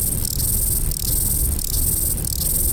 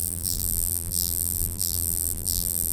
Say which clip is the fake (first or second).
second